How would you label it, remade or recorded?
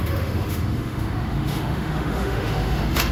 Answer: remade